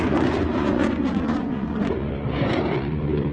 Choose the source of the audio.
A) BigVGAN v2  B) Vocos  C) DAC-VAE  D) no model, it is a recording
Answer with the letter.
B